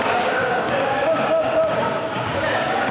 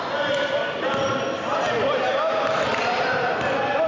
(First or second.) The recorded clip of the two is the second